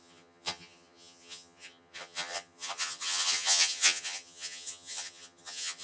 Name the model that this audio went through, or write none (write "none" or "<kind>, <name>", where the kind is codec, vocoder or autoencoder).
vocoder, HiFi-GAN